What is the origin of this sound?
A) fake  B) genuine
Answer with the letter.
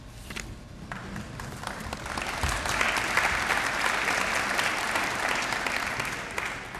B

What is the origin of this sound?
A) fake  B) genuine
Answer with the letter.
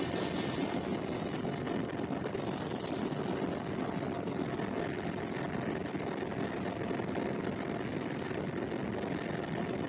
B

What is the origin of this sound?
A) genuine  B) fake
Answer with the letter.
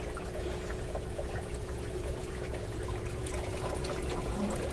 B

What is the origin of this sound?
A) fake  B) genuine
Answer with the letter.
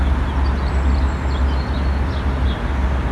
B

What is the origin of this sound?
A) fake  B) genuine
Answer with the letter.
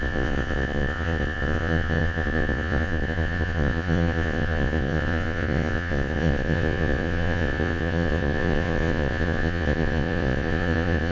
A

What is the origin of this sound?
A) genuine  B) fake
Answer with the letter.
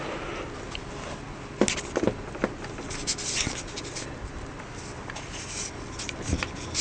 A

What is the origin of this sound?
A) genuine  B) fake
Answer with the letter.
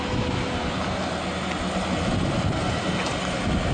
A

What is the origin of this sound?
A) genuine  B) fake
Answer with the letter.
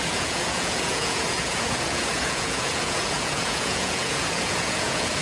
B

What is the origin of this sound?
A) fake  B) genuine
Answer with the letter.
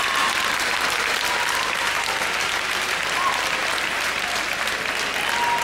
B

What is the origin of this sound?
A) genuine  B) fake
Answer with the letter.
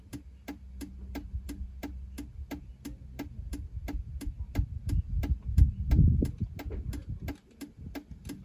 A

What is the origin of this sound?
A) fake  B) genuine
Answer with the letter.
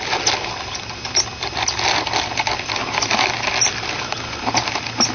B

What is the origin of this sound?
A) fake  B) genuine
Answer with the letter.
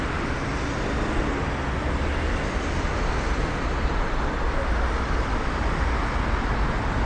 B